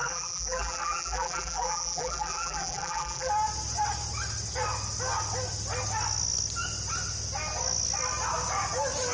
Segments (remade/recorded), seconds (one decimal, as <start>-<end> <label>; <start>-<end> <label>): 0.0-3.3 remade; 3.3-9.1 recorded